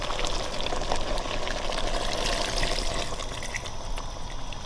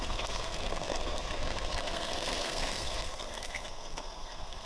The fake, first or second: second